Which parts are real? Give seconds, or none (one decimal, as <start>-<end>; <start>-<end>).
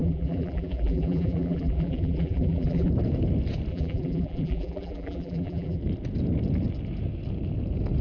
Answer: 2.9-3.7; 5.8-8.0